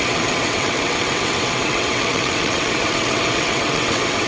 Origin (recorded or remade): remade